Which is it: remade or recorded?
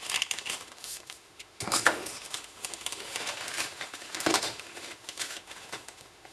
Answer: remade